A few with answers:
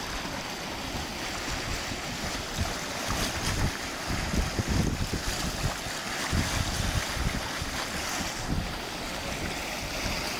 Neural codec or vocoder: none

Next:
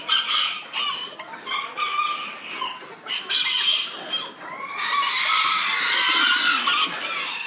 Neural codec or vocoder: none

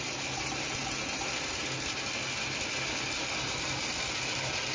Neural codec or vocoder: none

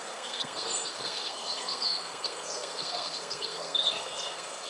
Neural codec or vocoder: codec, SNAC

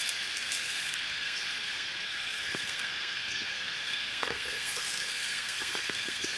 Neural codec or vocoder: codec, SNAC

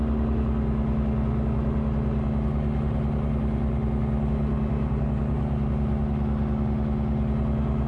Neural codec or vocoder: none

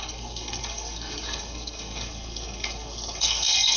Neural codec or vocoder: codec, SNAC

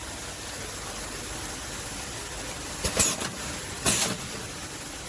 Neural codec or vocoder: none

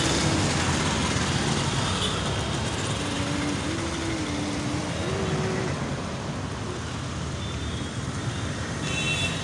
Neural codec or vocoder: none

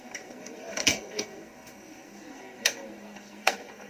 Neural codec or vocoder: codec, SNAC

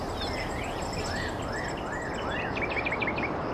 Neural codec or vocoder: none